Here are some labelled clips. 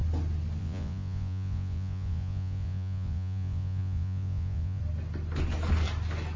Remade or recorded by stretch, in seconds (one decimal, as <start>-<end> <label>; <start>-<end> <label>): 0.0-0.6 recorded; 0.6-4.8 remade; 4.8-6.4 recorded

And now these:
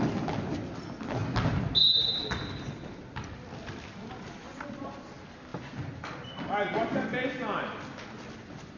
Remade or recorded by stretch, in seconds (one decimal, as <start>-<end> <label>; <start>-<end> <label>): 0.0-8.8 recorded

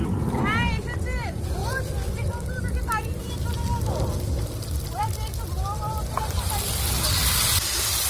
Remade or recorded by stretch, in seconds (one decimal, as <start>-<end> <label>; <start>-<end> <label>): 0.0-8.1 recorded

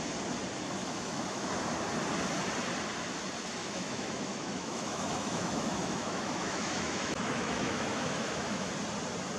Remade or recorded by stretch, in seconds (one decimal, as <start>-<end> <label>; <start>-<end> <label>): 0.0-0.8 recorded; 0.8-1.5 remade; 1.5-3.6 recorded; 3.6-8.7 remade; 8.7-9.4 recorded

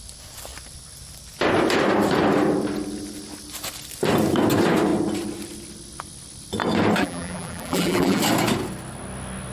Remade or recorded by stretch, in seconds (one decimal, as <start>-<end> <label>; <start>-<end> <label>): 0.0-7.0 recorded; 7.0-8.2 remade; 8.2-9.5 recorded

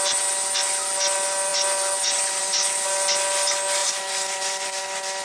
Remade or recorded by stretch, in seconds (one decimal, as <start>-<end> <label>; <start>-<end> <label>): 0.0-3.8 recorded; 3.8-4.8 remade; 4.8-5.2 recorded

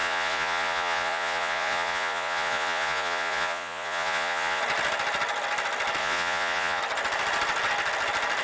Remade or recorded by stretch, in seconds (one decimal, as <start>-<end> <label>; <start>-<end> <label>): 0.0-4.6 remade; 4.6-6.0 recorded; 6.0-6.8 remade; 6.8-8.4 recorded

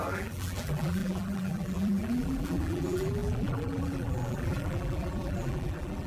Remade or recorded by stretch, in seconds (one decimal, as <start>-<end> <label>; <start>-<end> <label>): 0.0-6.1 remade